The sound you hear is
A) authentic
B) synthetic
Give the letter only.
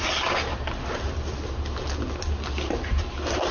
A